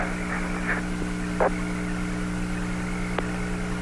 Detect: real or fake real